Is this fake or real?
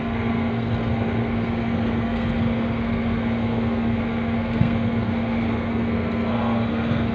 fake